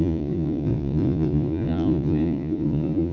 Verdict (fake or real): fake